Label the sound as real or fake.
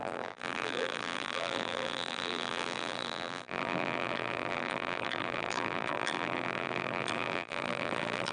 fake